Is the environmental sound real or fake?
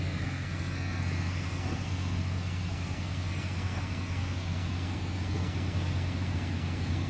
fake